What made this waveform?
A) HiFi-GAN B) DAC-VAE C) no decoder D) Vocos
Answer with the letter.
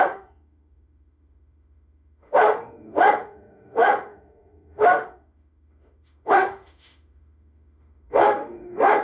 B